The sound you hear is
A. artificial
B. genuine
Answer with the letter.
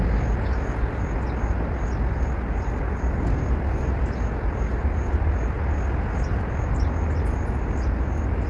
B